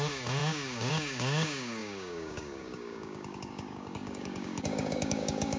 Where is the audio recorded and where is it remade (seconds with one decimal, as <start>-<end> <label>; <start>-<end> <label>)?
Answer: 0.0-5.6 remade